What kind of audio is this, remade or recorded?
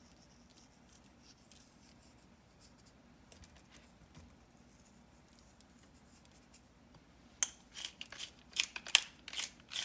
recorded